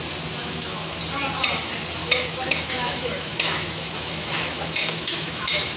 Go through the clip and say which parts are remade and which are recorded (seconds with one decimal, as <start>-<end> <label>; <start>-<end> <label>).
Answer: 0.0-0.4 recorded; 0.4-1.0 remade; 1.0-2.0 recorded; 2.0-5.8 remade